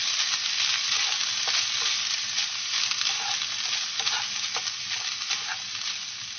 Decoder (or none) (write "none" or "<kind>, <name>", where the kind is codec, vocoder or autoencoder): none